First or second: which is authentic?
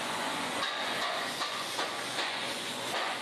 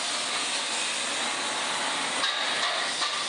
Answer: second